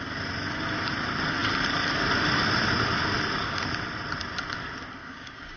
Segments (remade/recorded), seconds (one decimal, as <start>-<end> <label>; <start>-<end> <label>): 0.0-5.0 recorded; 5.0-5.6 remade